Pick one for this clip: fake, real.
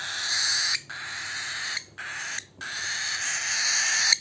real